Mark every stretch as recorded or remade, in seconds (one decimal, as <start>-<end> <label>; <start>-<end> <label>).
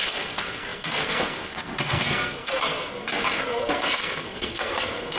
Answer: 0.0-5.2 remade